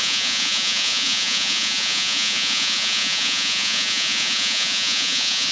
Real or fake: fake